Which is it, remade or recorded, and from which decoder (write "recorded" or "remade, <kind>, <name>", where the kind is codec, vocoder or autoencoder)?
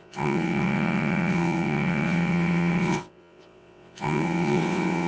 remade, vocoder, WaveNeXt